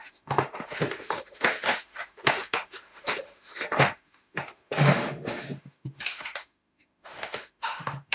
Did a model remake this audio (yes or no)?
yes